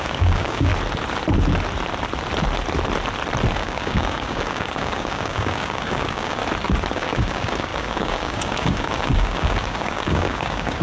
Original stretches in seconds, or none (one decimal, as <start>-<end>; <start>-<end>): 0.7-3.5; 6.4-6.9